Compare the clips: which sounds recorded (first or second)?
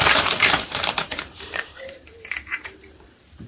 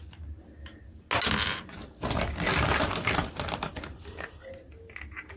second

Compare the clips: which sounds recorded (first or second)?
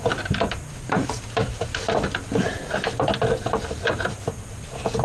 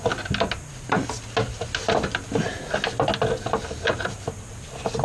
second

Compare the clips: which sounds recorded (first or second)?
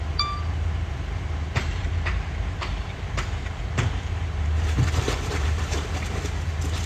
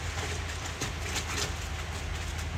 second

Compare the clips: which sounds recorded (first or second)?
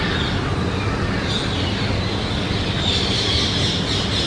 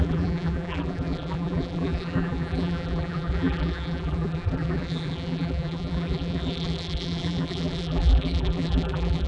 first